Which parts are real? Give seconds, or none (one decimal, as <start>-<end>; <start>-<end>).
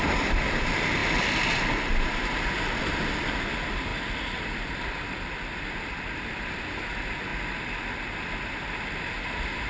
1.0-2.8; 3.9-4.4; 7.3-9.0